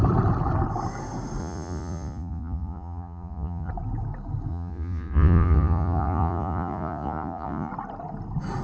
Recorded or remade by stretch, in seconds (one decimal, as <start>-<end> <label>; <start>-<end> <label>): 0.0-1.4 recorded; 1.4-3.7 remade; 3.7-4.5 recorded; 4.5-7.7 remade; 7.7-8.6 recorded